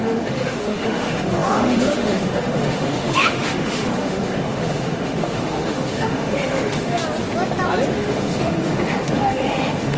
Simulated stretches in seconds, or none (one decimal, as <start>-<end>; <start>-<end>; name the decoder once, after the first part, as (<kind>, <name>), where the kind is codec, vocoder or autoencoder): 0.0-7.0 (autoencoder, DAC-VAE); 7.9-10.0